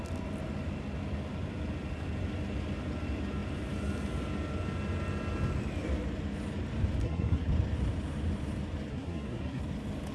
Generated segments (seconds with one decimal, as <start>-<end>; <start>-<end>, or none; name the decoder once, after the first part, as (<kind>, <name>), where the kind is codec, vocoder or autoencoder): 7.0-7.5 (codec, SNAC); 8.9-9.6